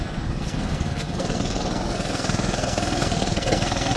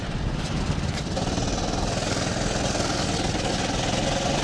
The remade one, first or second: first